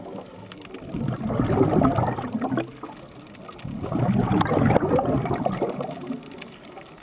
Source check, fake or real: real